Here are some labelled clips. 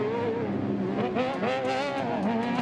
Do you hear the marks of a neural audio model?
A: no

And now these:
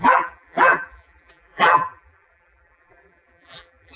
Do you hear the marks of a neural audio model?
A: yes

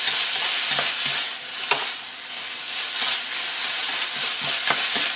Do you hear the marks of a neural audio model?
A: no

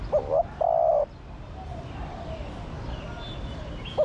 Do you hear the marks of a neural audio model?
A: no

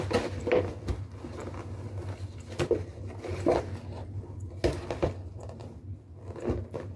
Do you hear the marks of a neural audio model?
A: no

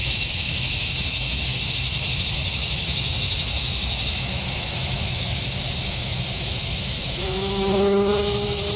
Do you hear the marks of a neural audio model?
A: yes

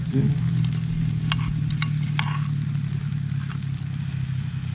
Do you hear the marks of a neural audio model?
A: no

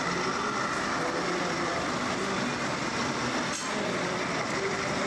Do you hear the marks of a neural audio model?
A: no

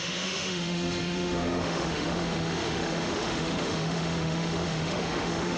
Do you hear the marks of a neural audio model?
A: yes